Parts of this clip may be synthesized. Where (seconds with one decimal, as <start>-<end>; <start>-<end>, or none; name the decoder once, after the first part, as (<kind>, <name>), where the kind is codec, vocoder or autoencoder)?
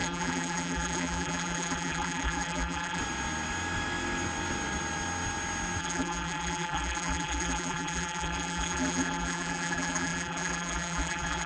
0.0-3.0 (vocoder, BigVGAN v2); 5.8-11.5